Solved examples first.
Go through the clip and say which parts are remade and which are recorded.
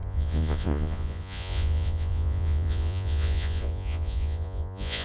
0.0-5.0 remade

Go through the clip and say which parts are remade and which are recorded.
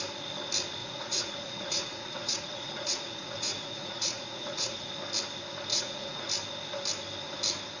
0.0-0.8 recorded; 0.8-4.9 remade; 4.9-5.7 recorded; 5.7-6.3 remade; 6.3-7.8 recorded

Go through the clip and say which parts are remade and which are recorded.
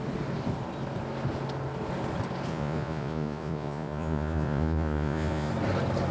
0.0-2.5 recorded; 2.5-5.5 remade; 5.5-6.1 recorded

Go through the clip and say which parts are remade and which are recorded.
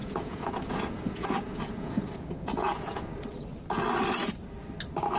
0.0-3.1 remade; 3.1-5.2 recorded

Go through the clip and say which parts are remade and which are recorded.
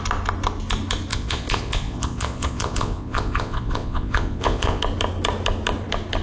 0.0-1.1 recorded; 1.1-4.8 remade; 4.8-6.2 recorded